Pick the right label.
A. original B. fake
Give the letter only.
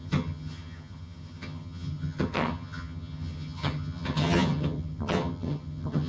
B